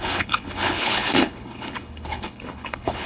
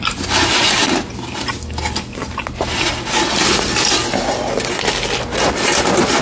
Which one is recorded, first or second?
second